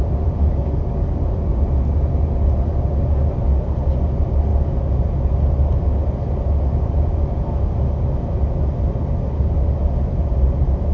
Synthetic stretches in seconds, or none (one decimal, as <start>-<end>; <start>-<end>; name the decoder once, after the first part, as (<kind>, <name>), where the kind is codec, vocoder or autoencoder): 0.5-1.2 (codec, DAC)